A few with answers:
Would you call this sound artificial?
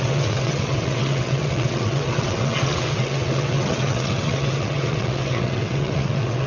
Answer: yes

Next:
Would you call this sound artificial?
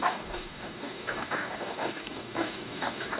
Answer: yes